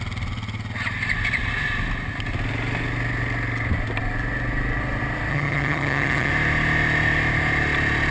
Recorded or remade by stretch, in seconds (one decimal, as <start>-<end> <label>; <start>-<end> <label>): 0.0-5.3 recorded; 5.3-6.3 remade; 6.3-8.1 recorded